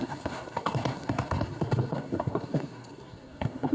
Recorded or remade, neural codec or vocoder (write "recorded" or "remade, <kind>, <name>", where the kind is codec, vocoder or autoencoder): remade, codec, SNAC